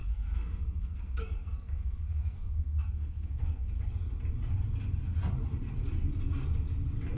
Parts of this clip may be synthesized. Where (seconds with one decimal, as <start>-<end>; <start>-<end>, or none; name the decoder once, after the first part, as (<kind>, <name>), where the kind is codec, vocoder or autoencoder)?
0.0-3.7 (codec, SNAC)

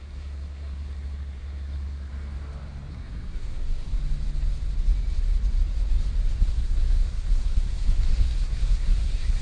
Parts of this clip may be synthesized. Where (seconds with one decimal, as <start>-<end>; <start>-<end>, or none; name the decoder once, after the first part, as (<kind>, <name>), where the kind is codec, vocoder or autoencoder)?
0.0-2.1 (codec, SNAC); 2.9-4.0; 6.4-9.4